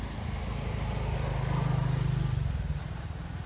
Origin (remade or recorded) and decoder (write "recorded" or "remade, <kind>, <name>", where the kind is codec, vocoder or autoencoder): recorded